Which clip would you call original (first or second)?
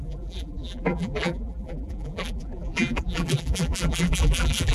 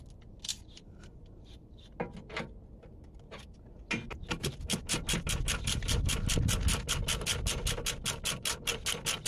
second